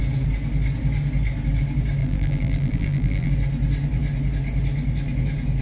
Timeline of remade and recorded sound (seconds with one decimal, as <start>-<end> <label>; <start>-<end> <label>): 0.0-2.0 recorded; 2.0-3.3 remade; 3.3-5.6 recorded